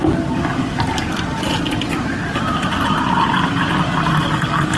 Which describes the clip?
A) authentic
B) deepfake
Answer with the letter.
A